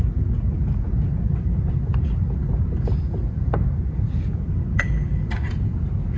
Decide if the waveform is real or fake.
fake